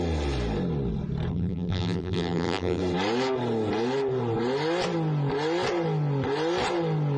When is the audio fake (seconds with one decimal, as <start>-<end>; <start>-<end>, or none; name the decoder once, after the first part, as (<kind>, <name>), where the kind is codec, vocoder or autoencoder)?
1.3-2.8 (vocoder, BigVGAN v2)